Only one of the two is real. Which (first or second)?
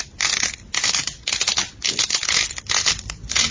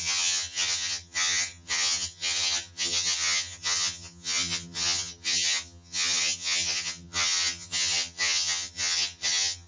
first